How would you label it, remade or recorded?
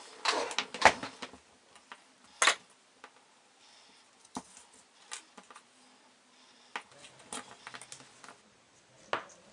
recorded